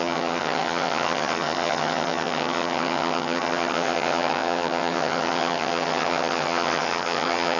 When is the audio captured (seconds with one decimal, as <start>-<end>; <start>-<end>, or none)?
none